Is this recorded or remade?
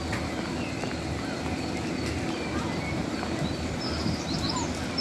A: recorded